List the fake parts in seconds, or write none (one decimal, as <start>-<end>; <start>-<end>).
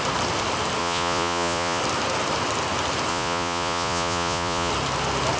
0.8-1.8; 3.1-4.7